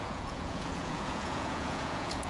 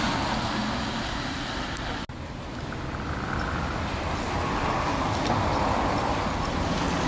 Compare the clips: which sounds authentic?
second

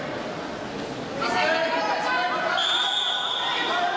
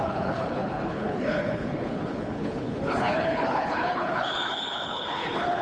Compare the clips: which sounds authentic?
first